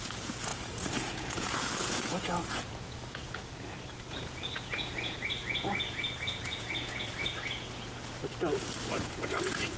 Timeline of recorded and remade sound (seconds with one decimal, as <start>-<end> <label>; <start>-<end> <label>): 0.0-3.4 remade; 3.4-4.1 recorded; 4.1-8.2 remade; 8.2-8.9 recorded; 8.9-9.8 remade